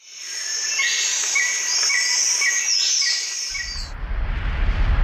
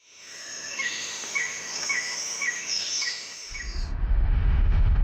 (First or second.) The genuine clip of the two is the first